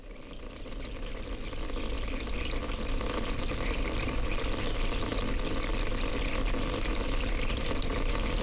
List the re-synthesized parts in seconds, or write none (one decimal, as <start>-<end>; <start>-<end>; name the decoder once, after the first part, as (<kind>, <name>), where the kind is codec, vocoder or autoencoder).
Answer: none